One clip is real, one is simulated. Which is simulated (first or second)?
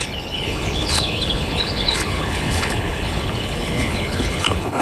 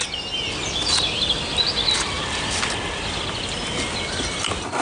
first